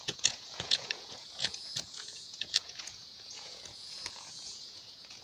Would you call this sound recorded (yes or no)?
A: no